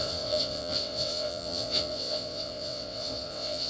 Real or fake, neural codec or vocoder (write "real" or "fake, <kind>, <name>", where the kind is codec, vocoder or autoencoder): fake, vocoder, WaveNeXt